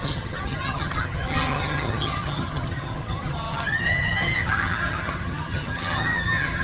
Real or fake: fake